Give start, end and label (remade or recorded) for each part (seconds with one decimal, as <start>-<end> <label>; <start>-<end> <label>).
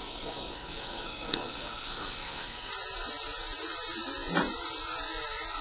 0.0-2.7 remade; 2.7-5.6 recorded